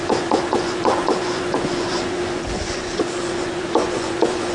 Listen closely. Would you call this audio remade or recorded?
remade